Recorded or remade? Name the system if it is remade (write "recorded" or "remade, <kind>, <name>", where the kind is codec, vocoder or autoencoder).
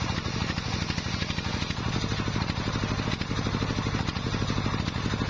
recorded